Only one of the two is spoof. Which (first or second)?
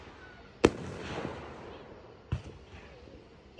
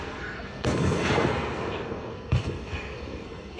second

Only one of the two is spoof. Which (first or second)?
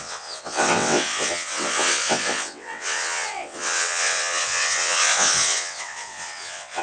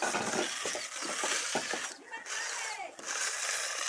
first